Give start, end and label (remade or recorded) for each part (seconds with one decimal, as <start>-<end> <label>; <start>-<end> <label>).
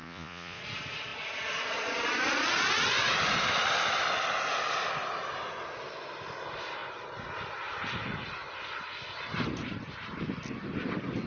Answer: 0.0-0.6 remade; 0.6-11.3 recorded